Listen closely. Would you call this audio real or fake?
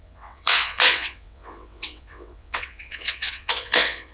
fake